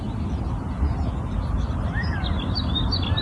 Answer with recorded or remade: recorded